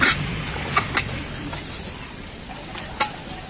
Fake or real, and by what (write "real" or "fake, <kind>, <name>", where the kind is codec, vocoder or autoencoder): real